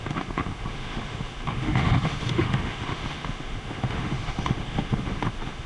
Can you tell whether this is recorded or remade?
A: remade